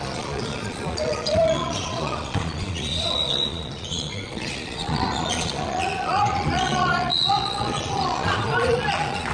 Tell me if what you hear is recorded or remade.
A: remade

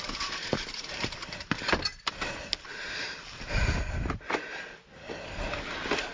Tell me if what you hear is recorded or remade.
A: recorded